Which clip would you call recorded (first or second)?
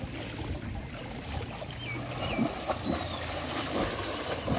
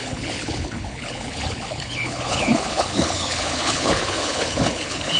first